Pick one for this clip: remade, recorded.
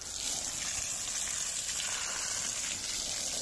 recorded